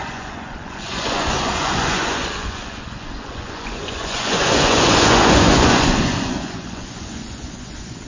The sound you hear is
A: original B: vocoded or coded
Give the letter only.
B